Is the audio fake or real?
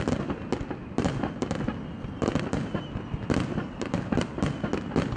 real